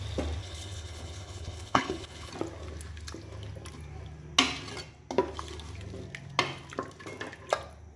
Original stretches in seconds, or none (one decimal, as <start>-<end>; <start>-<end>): 0.0-0.4; 2.3-8.0

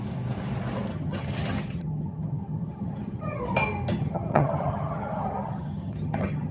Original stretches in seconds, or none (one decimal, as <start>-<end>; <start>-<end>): 0.0-0.9; 3.4-3.9

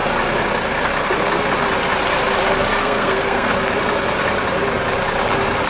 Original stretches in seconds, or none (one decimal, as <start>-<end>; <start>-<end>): 0.0-2.8; 3.5-5.7

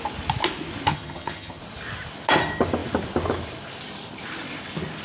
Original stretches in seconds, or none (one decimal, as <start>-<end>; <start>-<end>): 0.0-0.9; 1.6-5.0

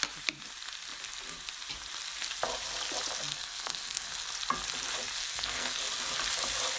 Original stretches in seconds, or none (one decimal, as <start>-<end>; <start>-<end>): 0.0-3.3; 4.1-5.2; 5.8-6.8